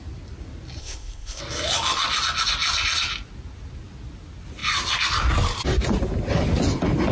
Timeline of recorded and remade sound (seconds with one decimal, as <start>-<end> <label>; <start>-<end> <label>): 0.0-0.8 recorded; 0.8-1.4 remade; 1.4-7.1 recorded

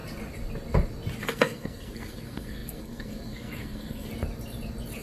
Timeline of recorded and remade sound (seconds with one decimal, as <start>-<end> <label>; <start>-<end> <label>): 0.0-1.2 recorded; 1.2-4.1 remade; 4.1-5.0 recorded

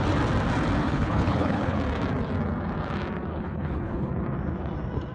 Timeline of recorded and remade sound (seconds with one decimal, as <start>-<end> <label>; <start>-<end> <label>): 0.0-0.8 recorded; 0.8-1.8 remade; 1.8-3.3 recorded; 3.3-4.1 remade; 4.1-5.1 recorded